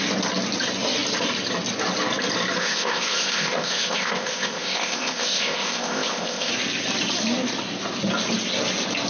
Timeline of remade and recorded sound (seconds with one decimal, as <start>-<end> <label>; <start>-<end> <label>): 0.0-2.6 recorded; 2.6-6.5 remade; 6.5-9.1 recorded